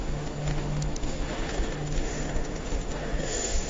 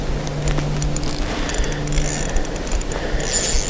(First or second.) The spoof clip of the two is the first